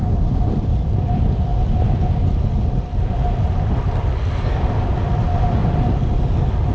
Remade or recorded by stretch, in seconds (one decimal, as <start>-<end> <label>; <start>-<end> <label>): 0.0-1.5 remade; 1.5-4.5 recorded; 4.5-6.7 remade